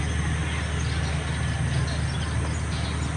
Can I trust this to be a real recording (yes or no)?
yes